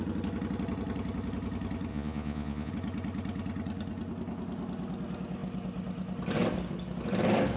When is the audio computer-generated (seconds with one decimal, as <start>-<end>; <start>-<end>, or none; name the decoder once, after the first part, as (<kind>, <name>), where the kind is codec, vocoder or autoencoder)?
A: 1.9-2.7 (vocoder, Vocos)